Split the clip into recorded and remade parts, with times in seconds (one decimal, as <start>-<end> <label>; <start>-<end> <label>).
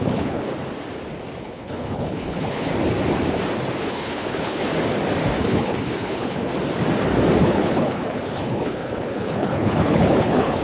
0.0-0.5 remade; 0.5-1.4 recorded; 1.4-2.7 remade; 2.7-3.8 recorded; 3.8-4.6 remade; 4.6-5.4 recorded; 5.4-6.5 remade; 6.5-7.4 recorded; 7.4-10.6 remade